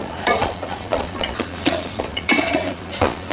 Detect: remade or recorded remade